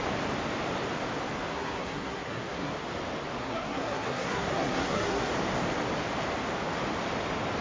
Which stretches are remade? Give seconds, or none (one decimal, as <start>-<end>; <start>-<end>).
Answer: 1.5-2.7; 3.4-5.3